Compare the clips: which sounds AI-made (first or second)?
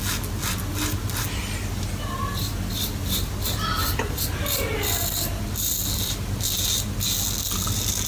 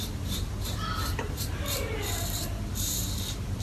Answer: second